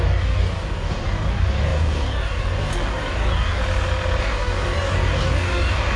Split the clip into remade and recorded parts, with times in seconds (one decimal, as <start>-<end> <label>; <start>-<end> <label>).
0.0-3.6 remade; 3.6-4.2 recorded; 4.2-6.0 remade